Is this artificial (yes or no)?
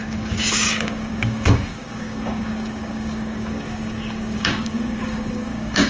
yes